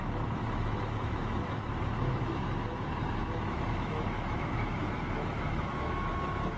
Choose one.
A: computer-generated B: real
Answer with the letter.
A